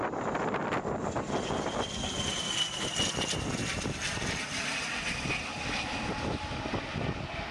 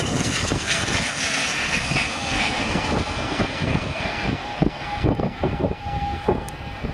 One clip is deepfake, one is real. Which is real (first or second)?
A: first